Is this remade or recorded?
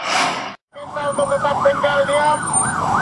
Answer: remade